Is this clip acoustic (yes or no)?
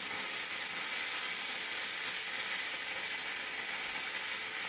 yes